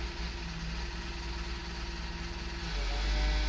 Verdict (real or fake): real